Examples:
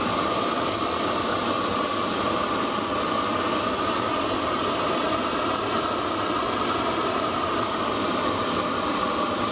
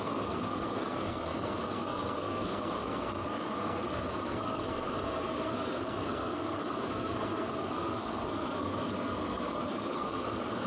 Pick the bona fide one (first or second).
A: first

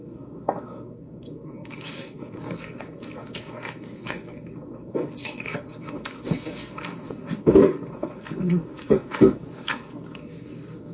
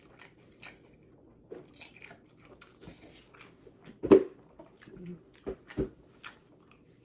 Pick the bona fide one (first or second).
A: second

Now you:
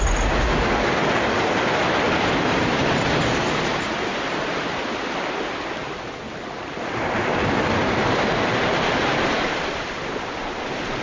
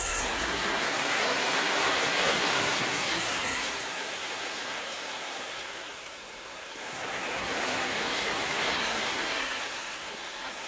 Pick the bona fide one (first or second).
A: first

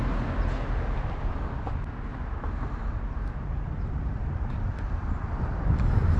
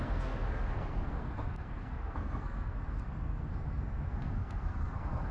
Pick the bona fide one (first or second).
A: first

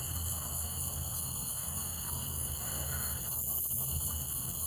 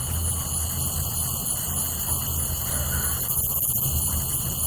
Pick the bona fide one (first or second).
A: second